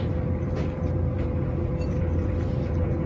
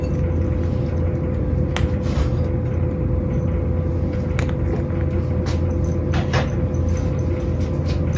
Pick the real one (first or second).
second